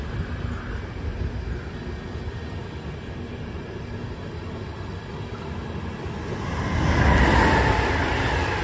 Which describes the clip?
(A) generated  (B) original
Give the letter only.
B